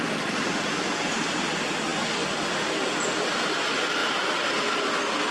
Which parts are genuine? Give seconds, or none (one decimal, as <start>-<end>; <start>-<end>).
0.0-5.3